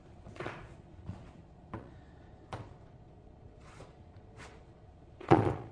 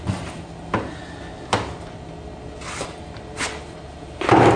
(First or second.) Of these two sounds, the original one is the second